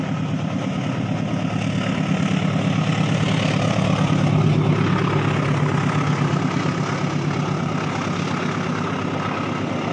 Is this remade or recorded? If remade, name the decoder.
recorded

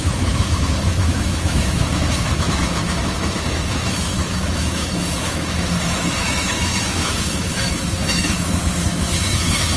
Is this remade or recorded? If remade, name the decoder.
remade, autoencoder, DAC-VAE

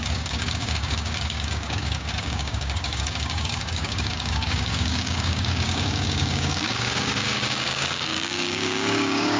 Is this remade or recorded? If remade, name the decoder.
remade, codec, DAC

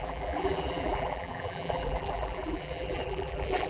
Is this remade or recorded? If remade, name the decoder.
remade, vocoder, BigVGAN v2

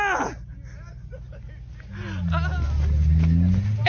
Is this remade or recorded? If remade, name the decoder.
recorded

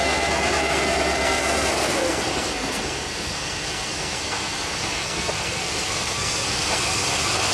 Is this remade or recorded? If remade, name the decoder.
remade, codec, SNAC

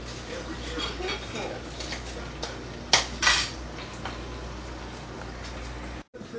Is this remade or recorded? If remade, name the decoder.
recorded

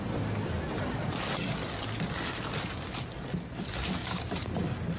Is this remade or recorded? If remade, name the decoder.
recorded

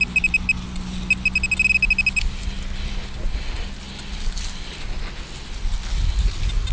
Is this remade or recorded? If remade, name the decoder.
recorded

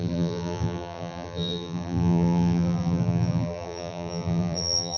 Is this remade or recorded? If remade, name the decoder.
remade, vocoder, BigVGAN v2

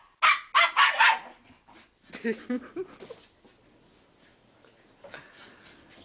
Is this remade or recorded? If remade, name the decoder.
recorded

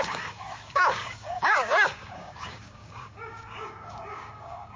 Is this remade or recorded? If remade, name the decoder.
remade, codec, DAC